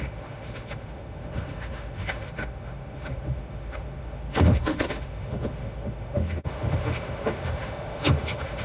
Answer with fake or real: fake